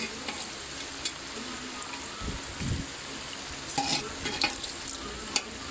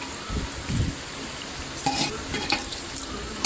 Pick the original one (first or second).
first